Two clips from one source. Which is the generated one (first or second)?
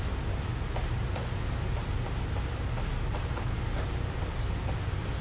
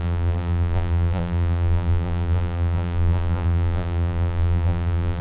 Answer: second